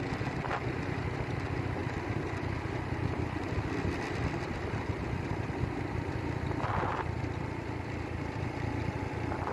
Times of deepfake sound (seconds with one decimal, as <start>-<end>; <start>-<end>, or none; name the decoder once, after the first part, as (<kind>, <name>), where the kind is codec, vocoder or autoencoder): none